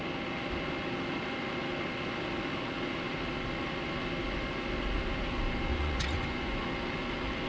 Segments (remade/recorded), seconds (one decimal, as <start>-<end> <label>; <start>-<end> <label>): 0.0-5.7 recorded; 5.7-6.7 remade; 6.7-7.5 recorded